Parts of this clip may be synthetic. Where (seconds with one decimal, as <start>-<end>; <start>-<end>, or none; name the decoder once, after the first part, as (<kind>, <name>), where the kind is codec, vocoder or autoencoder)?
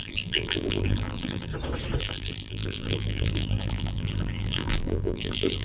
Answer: 0.0-1.5 (vocoder, BigVGAN v2); 2.0-5.6